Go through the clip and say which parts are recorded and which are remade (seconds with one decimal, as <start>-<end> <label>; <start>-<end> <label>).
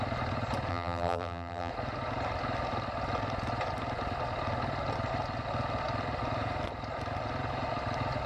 0.0-0.7 recorded; 0.7-1.7 remade; 1.7-8.3 recorded